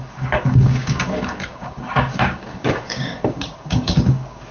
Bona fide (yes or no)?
no